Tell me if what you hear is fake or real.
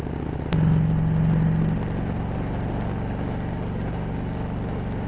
real